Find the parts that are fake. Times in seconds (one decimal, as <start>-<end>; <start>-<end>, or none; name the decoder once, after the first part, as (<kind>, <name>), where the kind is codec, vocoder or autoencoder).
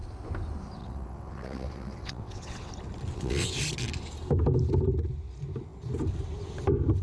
0.8-2.7 (vocoder, WaveNeXt); 3.1-3.6